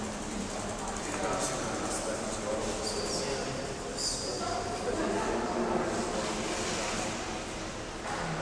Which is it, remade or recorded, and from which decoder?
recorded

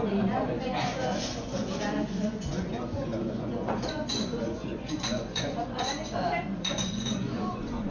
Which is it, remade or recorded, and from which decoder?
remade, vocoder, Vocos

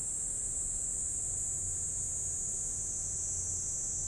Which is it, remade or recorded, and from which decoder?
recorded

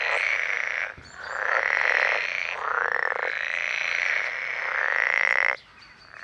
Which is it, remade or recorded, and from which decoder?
recorded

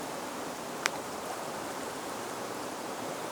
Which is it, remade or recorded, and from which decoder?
remade, vocoder, BigVGAN v2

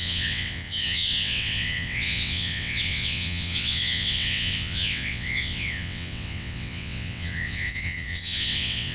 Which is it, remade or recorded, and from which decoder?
remade, vocoder, WaveNeXt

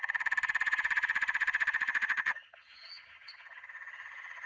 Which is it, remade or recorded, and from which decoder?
remade, vocoder, HiFi-GAN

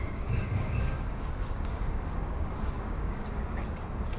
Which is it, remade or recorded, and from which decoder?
remade, codec, DAC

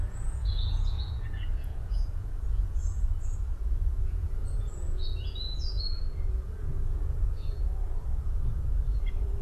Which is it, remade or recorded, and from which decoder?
remade, vocoder, Vocos